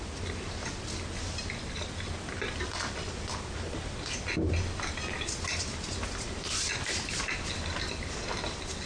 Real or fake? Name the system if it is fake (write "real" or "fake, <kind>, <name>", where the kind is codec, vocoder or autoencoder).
real